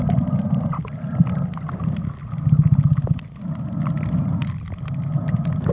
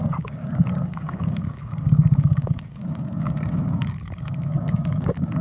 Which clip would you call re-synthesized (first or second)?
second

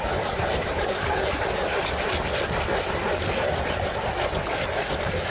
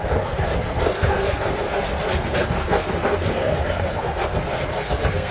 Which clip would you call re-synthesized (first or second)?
second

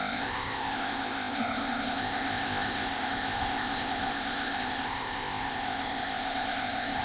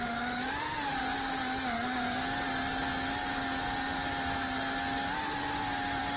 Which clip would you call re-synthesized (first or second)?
first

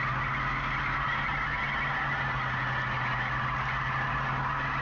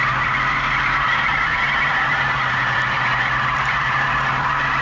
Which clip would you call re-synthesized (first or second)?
second